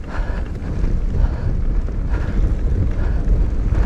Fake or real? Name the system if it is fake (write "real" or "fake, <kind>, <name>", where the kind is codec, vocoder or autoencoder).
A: real